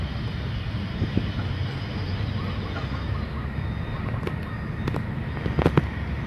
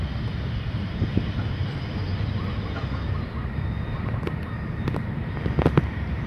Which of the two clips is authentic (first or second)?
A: first